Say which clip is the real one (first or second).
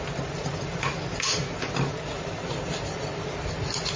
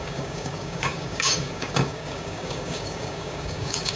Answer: first